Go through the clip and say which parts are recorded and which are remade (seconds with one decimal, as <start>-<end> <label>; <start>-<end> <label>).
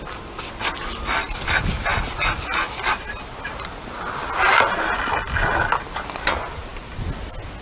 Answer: 0.0-7.6 recorded